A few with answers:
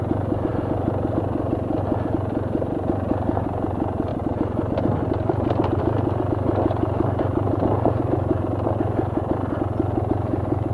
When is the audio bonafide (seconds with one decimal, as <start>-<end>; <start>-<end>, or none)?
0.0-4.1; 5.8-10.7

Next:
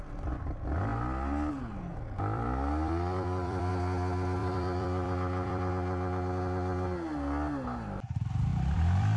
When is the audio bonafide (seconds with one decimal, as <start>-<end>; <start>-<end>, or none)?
0.0-1.9; 3.7-4.4; 5.7-8.5

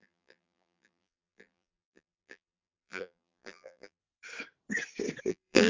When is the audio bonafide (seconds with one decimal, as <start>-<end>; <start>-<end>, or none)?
4.0-5.3

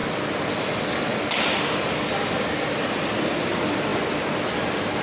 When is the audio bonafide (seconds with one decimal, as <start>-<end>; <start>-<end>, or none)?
0.0-5.0